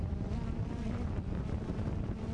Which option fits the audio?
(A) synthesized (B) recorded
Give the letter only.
B